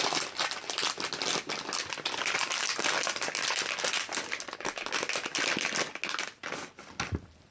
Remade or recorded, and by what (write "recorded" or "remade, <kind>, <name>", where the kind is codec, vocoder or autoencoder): recorded